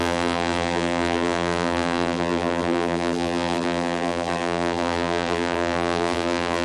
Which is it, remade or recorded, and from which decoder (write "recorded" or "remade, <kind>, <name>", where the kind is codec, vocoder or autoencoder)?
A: remade, vocoder, BigVGAN v2